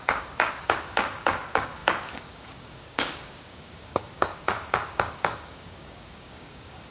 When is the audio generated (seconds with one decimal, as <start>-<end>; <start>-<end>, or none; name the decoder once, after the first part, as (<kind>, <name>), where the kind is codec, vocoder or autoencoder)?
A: 0.0-6.9 (codec, DAC)